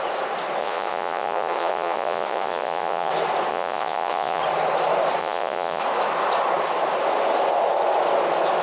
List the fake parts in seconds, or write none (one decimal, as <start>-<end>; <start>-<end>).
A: 0.6-3.1; 3.5-4.4; 5.2-5.8